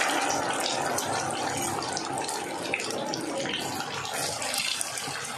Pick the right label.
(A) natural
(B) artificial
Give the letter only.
A